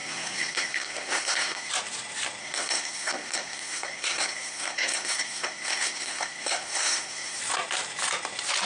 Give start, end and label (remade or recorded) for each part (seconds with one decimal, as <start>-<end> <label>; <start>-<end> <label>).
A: 0.0-1.7 remade; 1.7-2.4 recorded; 2.4-7.4 remade; 7.4-8.7 recorded